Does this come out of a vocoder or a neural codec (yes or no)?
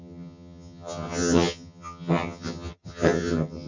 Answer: yes